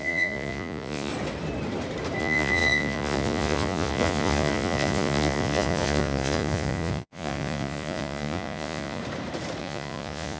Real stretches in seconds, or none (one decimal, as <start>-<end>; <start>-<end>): 1.1-2.2; 9.0-9.6